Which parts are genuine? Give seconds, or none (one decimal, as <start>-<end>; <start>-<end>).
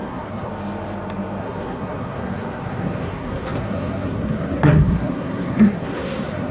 0.5-1.4